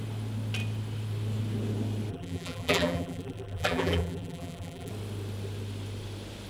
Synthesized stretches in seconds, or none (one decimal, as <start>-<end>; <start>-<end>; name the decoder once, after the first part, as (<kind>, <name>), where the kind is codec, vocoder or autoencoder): 2.1-4.9 (vocoder, BigVGAN v2)